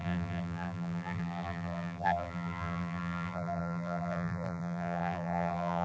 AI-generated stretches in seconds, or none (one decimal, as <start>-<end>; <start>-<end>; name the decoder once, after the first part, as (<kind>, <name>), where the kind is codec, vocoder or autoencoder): 0.0-5.8 (vocoder, BigVGAN v2)